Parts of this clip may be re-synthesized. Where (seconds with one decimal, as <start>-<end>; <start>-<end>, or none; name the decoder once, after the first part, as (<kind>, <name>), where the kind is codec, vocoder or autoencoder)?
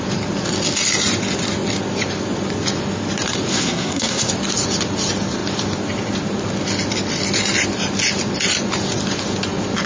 3.5-4.3 (codec, SNAC)